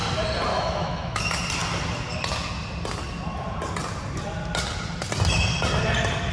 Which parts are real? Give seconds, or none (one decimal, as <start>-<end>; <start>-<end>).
0.0-0.5; 1.2-6.3